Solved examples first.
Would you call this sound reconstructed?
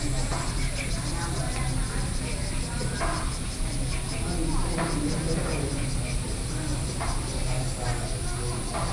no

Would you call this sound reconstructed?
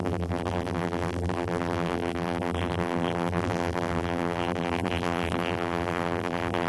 yes